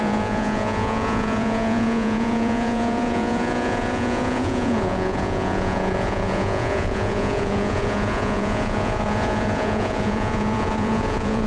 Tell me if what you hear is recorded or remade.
remade